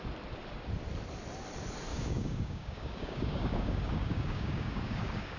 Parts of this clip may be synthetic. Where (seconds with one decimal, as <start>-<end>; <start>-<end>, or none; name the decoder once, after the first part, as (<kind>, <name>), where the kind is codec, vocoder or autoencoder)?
1.9-5.4 (codec, DAC)